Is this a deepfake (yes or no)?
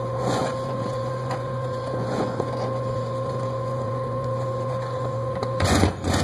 yes